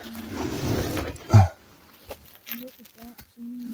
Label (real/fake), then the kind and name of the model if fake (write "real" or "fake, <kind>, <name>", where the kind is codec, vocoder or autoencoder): real